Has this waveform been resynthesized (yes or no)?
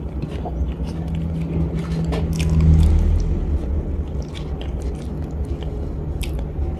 no